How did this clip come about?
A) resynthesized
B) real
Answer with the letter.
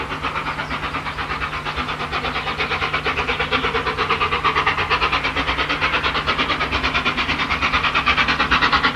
B